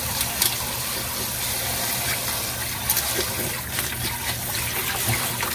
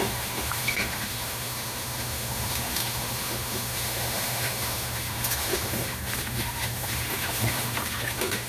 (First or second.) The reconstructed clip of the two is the second